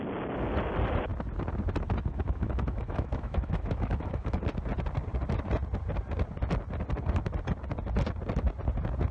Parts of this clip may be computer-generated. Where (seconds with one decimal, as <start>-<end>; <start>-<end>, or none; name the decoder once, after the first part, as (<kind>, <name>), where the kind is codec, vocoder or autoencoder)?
2.1-4.4 (autoencoder, DAC-VAE)